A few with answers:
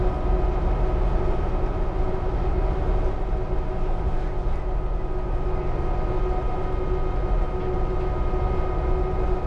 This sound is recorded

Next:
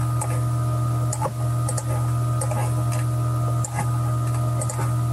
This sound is recorded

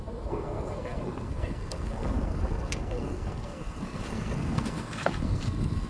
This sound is remade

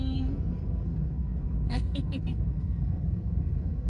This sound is remade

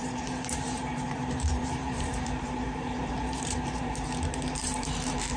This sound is remade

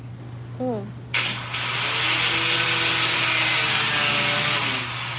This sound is recorded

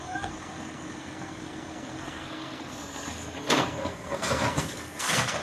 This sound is remade